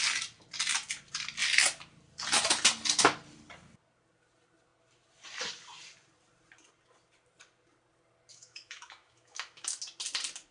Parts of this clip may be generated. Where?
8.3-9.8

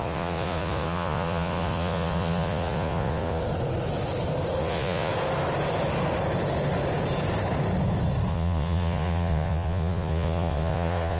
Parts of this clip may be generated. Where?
0.0-3.4; 4.6-5.1; 8.3-11.2